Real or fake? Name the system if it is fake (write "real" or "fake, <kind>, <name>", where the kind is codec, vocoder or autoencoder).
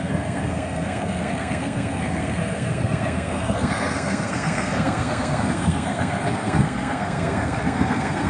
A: fake, codec, SNAC